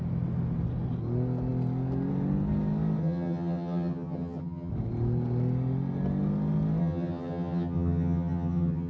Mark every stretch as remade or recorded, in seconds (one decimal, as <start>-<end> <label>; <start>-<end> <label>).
0.0-3.0 recorded; 3.0-4.7 remade; 4.7-6.8 recorded; 6.8-8.9 remade